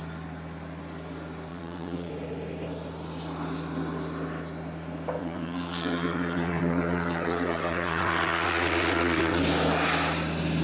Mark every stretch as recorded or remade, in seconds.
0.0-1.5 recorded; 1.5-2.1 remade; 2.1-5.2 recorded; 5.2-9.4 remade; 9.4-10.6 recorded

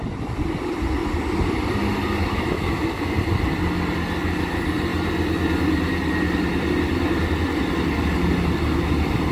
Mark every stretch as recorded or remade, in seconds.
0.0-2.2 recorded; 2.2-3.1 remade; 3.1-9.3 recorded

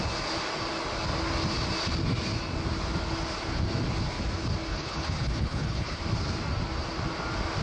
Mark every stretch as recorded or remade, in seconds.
0.0-4.7 recorded; 4.7-6.0 remade; 6.0-7.6 recorded

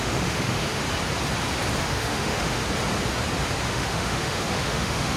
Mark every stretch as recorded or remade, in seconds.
0.0-0.8 remade; 0.8-1.8 recorded; 1.8-2.6 remade; 2.6-3.7 recorded; 3.7-5.2 remade

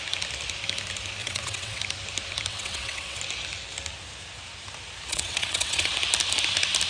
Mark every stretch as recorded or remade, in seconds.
0.0-1.2 recorded; 1.2-1.8 remade; 1.8-2.5 recorded; 2.5-3.2 remade; 3.2-5.1 recorded; 5.1-5.9 remade; 5.9-6.9 recorded

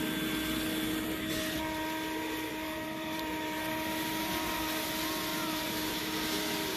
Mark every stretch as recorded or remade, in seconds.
0.0-2.5 recorded; 2.5-3.7 remade; 3.7-5.3 recorded; 5.3-6.0 remade; 6.0-6.8 recorded

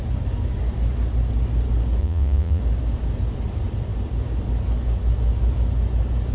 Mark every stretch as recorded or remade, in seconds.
0.0-2.0 recorded; 2.0-2.6 remade; 2.6-6.3 recorded